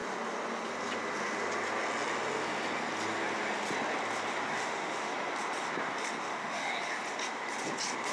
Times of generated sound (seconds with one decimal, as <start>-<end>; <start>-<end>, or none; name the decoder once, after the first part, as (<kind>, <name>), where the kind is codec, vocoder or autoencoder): 4.5-5.1 (autoencoder, DAC-VAE); 6.2-6.7